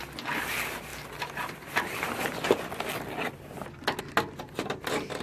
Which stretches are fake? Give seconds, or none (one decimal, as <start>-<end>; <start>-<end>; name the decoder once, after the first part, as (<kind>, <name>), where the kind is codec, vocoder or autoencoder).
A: none